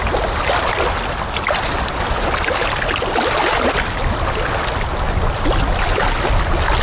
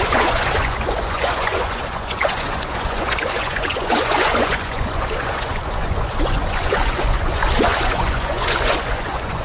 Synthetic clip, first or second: second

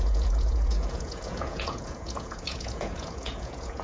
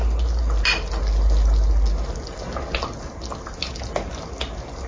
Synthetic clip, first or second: first